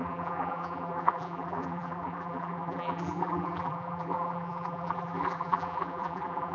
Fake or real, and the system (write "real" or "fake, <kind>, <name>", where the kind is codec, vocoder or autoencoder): fake, vocoder, BigVGAN v2